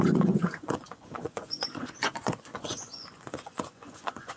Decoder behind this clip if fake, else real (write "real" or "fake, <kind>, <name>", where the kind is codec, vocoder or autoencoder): fake, vocoder, Vocos